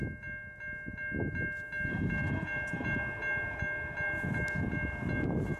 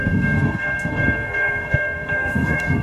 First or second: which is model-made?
second